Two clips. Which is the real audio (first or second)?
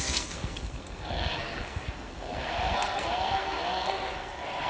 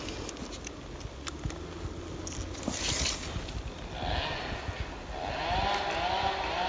second